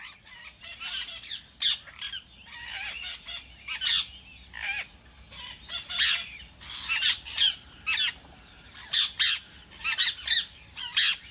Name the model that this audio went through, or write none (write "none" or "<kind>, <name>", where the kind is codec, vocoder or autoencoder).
none